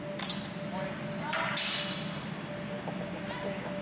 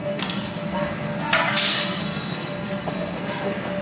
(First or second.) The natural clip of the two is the first